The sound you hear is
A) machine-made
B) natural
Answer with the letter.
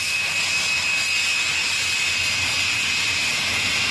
B